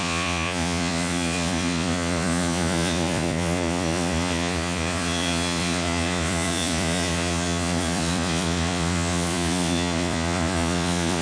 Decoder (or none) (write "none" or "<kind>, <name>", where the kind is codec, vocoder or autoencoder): vocoder, Vocos